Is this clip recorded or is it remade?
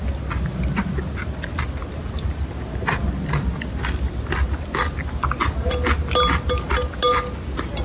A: recorded